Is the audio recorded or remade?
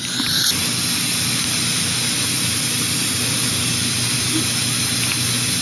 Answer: recorded